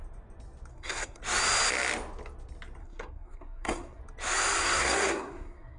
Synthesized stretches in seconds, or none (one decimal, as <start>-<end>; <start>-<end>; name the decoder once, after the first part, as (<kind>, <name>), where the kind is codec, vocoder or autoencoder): 0.7-1.2 (codec, SNAC); 2.8-4.0; 4.6-5.8